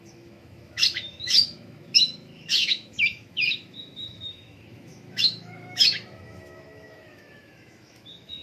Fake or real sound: fake